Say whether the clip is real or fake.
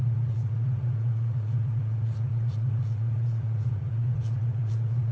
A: fake